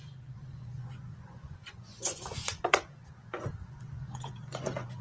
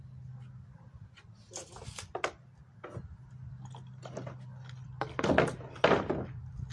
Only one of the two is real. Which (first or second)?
second